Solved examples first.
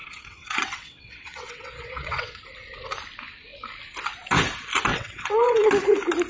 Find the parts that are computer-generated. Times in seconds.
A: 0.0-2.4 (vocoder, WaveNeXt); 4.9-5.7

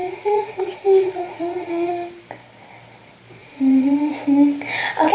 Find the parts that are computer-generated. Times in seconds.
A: 0.0-1.9 (vocoder, Vocos); 3.4-4.1

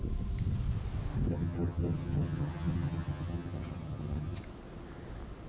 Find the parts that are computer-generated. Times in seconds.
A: 1.3-4.4 (vocoder, HiFi-GAN)

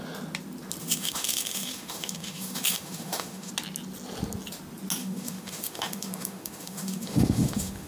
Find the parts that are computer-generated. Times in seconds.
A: 0.8-3.5 (autoencoder, DAC-VAE); 5.0-7.9

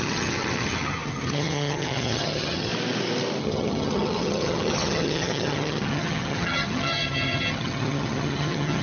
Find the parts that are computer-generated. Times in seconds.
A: 0.0-2.7 (vocoder, HiFi-GAN); 3.4-8.8